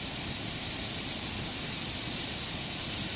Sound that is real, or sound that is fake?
real